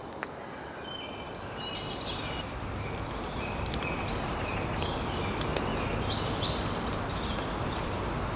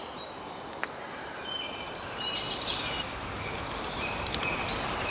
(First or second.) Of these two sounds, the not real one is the second